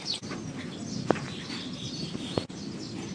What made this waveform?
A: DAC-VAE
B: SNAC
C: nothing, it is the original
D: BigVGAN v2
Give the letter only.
C